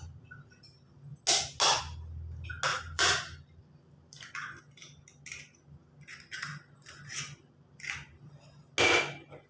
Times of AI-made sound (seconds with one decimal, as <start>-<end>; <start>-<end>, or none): 2.7-4.6; 6.5-8.1